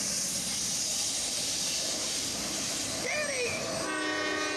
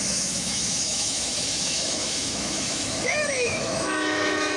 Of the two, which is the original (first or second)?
first